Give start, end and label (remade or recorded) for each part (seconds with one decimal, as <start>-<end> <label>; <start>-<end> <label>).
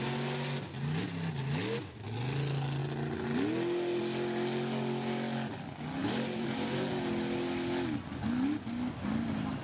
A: 0.0-6.0 recorded; 6.0-6.9 remade; 6.9-9.6 recorded